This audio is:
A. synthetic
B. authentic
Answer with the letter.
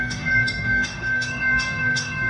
A